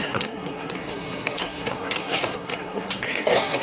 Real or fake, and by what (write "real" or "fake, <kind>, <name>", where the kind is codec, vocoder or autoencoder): fake, codec, SNAC